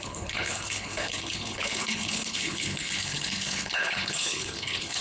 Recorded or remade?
remade